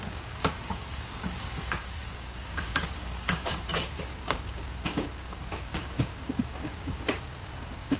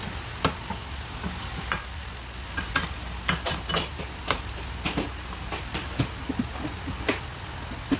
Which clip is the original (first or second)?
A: second